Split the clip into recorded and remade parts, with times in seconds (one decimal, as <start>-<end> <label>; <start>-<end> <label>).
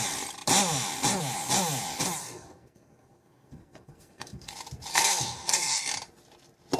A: 0.0-2.2 recorded; 2.2-4.5 remade; 4.5-4.9 recorded; 4.9-5.9 remade; 5.9-6.8 recorded